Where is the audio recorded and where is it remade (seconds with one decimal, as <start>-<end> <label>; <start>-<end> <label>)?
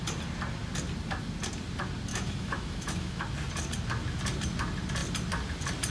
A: 0.0-2.1 recorded; 2.1-3.2 remade; 3.2-5.9 recorded